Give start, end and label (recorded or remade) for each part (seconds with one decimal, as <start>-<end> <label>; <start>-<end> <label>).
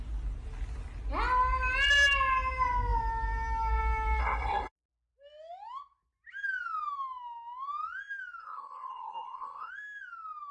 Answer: 0.0-4.2 recorded; 4.2-4.7 remade; 4.7-8.4 recorded; 8.4-9.7 remade; 9.7-10.5 recorded